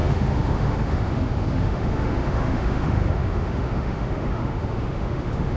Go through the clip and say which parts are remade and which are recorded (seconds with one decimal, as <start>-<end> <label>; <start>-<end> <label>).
0.0-5.6 remade